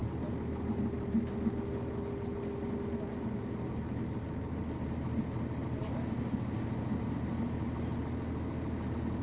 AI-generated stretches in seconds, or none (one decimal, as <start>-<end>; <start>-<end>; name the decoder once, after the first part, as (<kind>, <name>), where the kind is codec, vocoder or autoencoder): none